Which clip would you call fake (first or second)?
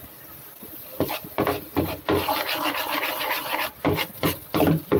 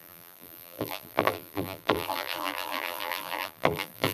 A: second